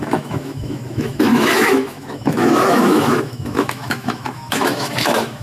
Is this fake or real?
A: fake